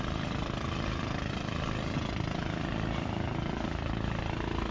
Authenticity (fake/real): real